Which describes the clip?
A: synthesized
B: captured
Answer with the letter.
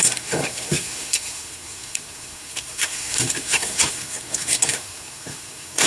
A